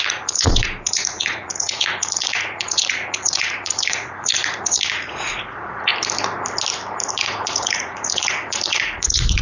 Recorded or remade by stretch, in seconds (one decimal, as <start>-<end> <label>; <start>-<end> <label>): 0.0-5.9 remade; 5.9-7.1 recorded; 7.1-9.4 remade